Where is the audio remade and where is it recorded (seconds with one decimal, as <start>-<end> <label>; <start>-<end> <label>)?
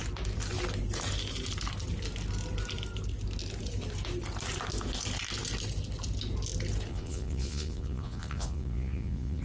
0.0-6.9 recorded; 6.9-9.4 remade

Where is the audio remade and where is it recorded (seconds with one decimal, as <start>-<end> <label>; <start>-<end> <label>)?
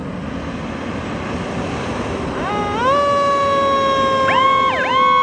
0.0-5.2 recorded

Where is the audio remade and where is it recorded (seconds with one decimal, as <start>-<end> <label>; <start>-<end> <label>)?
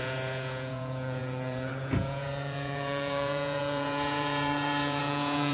0.0-5.5 remade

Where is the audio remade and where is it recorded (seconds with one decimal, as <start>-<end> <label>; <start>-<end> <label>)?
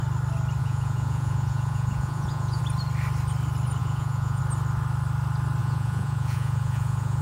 0.0-0.6 recorded; 0.6-2.6 remade; 2.6-3.8 recorded; 3.8-4.4 remade; 4.4-5.6 recorded; 5.6-7.2 remade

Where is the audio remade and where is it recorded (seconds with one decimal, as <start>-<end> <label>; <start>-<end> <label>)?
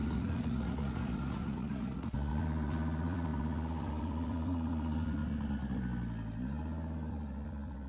0.0-5.2 remade; 5.2-7.1 recorded; 7.1-7.9 remade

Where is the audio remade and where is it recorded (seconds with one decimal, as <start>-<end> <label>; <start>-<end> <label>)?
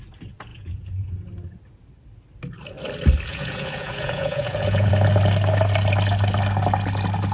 0.0-0.5 recorded; 0.5-1.1 remade; 1.1-3.3 recorded; 3.3-4.9 remade; 4.9-7.3 recorded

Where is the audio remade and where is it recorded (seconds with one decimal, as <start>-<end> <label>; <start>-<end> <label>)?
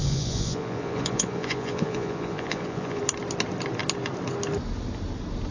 0.0-3.0 remade; 3.0-5.5 recorded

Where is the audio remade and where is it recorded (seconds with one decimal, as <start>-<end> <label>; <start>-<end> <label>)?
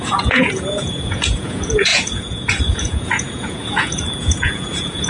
0.0-5.1 remade